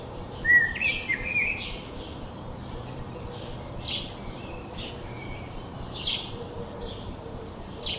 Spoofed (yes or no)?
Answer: yes